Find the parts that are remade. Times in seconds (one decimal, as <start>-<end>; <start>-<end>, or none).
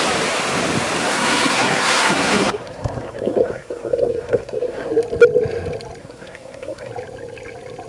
1.0-4.9; 6.0-6.9